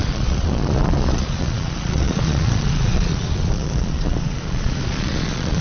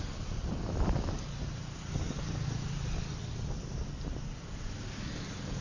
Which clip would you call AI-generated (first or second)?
first